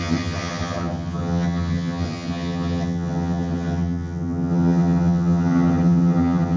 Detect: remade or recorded remade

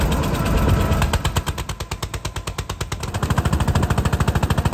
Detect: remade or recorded recorded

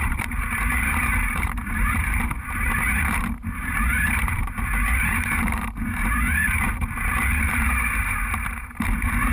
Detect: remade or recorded remade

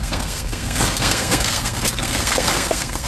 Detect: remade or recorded remade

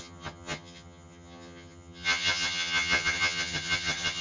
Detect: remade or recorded remade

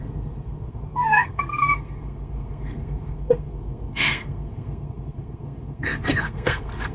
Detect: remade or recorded remade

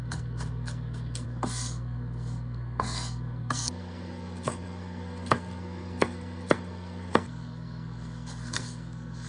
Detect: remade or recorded remade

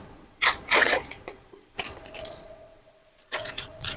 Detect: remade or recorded remade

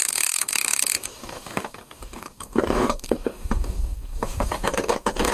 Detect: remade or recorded remade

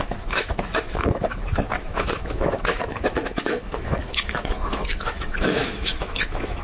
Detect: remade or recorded remade